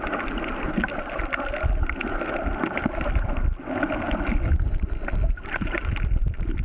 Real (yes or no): yes